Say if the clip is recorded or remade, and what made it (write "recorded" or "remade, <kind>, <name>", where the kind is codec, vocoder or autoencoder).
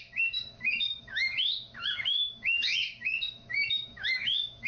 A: remade, autoencoder, DAC-VAE